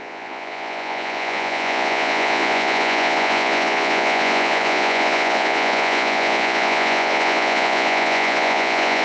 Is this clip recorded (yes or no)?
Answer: no